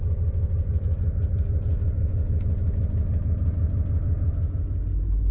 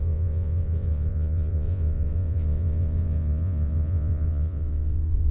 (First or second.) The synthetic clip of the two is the second